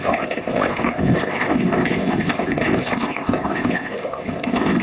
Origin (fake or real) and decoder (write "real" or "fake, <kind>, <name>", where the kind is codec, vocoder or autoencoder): fake, codec, ZipCodec